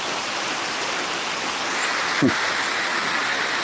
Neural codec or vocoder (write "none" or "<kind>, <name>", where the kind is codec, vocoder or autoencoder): none